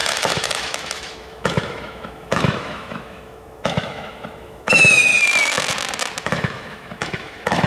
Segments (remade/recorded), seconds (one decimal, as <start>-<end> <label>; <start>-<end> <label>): 0.0-5.1 remade; 5.1-6.2 recorded; 6.2-7.7 remade